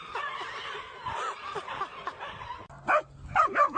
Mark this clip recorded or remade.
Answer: recorded